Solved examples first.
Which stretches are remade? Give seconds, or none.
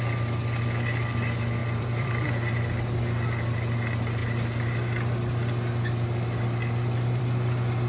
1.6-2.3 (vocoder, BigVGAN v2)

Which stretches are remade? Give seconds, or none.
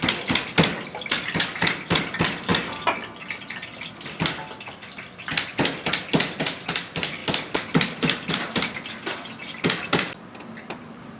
none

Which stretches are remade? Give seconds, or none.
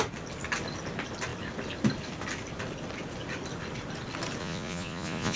4.4-5.4 (vocoder, Vocos)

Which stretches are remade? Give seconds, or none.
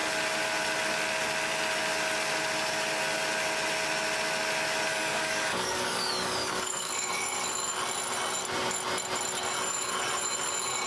4.9-6.9 (codec, DAC)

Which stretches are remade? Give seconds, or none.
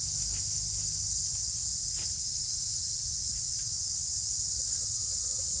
1.6-3.6 (vocoder, Vocos)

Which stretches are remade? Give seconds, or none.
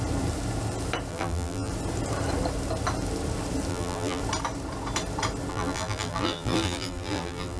1.1-1.7 (vocoder, BigVGAN v2); 3.7-4.2; 5.5-7.6